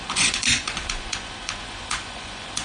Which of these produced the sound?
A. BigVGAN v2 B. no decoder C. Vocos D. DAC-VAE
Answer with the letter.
C